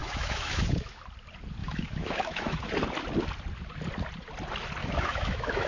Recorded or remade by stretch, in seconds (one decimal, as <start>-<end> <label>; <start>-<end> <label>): 0.0-1.0 remade; 1.0-1.6 recorded; 1.6-2.7 remade; 2.7-4.8 recorded; 4.8-5.7 remade